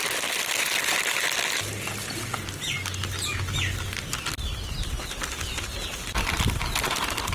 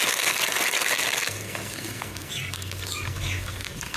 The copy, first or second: second